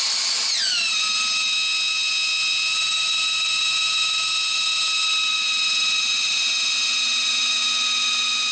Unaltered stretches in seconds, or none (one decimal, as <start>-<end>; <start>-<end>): 0.0-8.5